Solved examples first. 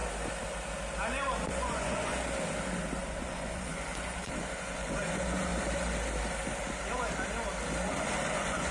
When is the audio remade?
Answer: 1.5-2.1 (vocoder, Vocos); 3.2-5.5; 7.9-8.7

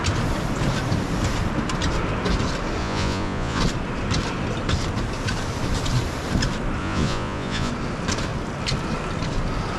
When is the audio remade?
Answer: 2.8-3.6 (vocoder, Vocos); 6.8-7.7

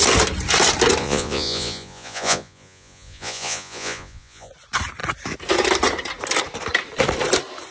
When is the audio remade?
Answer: 1.0-4.5 (vocoder, Vocos)

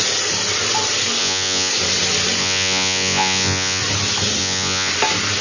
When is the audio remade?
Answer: 1.2-1.7 (vocoder, Vocos); 2.4-3.8; 4.4-4.9